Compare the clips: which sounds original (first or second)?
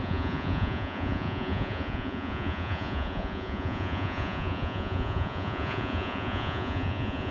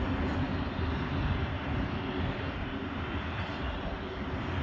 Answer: second